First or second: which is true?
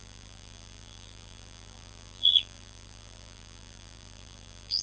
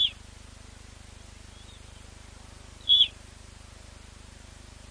second